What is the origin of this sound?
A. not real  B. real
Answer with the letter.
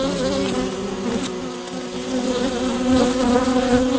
B